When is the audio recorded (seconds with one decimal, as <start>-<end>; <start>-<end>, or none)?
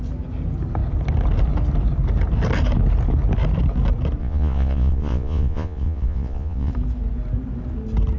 0.0-4.2; 6.7-8.2